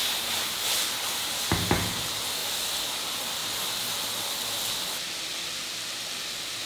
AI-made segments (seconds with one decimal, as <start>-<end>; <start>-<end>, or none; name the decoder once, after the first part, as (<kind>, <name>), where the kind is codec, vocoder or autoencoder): none

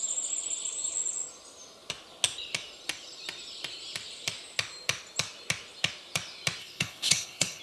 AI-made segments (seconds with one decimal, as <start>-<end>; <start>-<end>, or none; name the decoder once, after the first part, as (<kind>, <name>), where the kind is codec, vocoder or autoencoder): 6.6-7.6 (codec, HILCodec)